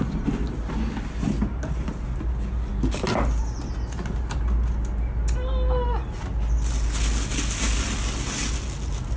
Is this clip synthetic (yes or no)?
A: no